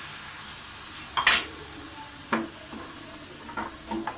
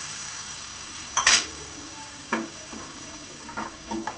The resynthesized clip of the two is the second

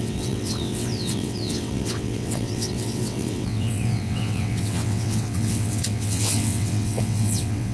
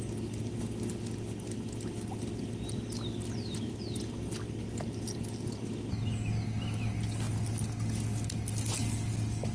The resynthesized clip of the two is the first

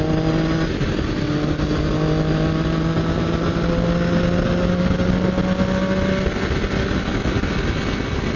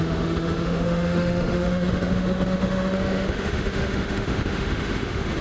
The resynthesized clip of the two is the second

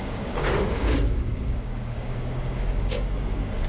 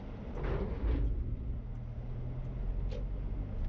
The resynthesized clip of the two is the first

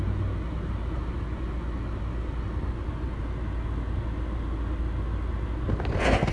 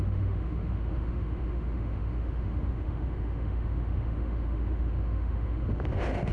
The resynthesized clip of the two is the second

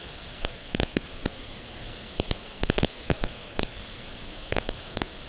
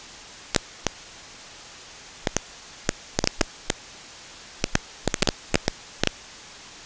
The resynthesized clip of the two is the first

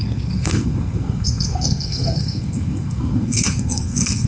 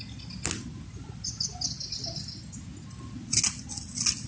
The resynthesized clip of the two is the first